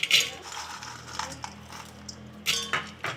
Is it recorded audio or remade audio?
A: recorded